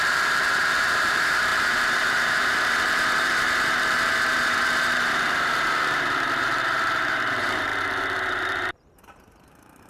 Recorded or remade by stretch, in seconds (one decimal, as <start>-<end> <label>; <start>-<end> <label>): 0.0-9.9 remade

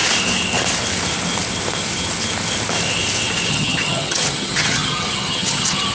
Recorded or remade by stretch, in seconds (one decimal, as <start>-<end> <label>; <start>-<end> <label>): 0.0-3.5 recorded; 3.5-5.9 remade

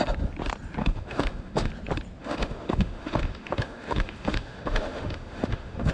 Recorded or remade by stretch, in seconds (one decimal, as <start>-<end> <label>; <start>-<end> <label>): 0.0-0.8 recorded; 0.8-1.7 remade; 1.7-2.2 recorded; 2.2-5.9 remade

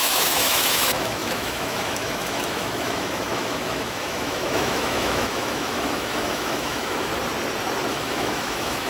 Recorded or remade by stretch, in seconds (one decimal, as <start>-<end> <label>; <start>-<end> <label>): 0.0-7.1 remade; 7.1-7.9 recorded; 7.9-8.9 remade